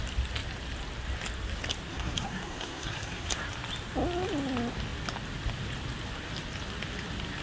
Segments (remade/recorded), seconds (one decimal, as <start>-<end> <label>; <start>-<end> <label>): 0.0-1.9 recorded; 1.9-3.3 remade; 3.3-7.4 recorded